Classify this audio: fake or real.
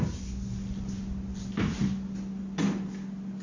real